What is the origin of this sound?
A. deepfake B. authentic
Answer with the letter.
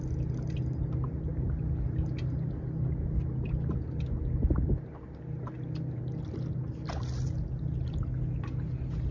B